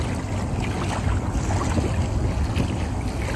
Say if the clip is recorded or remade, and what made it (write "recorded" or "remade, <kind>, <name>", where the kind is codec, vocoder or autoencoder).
recorded